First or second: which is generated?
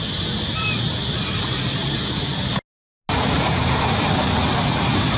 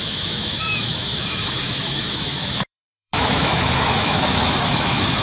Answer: second